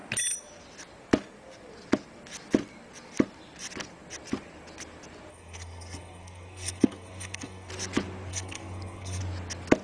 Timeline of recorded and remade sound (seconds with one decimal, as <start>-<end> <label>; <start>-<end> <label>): 0.0-5.3 recorded; 5.3-7.7 remade; 7.7-8.3 recorded; 8.3-9.2 remade; 9.2-9.8 recorded